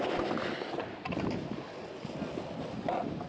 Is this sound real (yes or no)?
yes